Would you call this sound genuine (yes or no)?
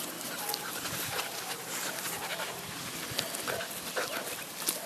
yes